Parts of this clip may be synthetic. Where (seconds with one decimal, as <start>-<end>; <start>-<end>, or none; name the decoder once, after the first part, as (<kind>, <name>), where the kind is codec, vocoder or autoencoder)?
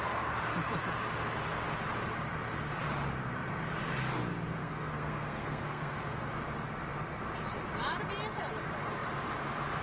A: 4.6-6.2 (codec, SNAC)